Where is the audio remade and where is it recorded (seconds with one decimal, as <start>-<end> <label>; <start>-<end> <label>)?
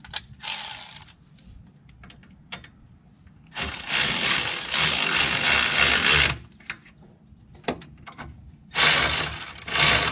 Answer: 0.0-10.1 recorded